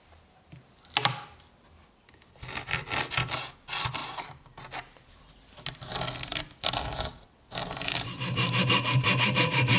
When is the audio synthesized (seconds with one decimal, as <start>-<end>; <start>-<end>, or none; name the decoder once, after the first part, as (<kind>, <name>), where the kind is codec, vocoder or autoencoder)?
4.0-4.6 (vocoder, BigVGAN v2); 7.6-9.8